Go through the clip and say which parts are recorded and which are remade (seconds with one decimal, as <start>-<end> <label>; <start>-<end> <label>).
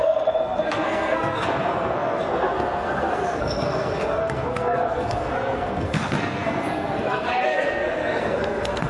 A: 0.0-8.9 remade